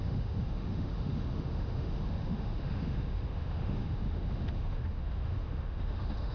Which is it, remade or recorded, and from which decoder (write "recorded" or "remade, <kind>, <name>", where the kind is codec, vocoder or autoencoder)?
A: remade, autoencoder, DAC-VAE